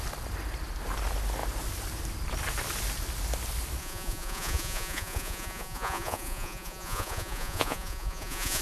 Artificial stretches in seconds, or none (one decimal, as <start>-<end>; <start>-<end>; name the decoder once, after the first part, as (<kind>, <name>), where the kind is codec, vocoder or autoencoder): 3.8-8.6 (vocoder, Vocos)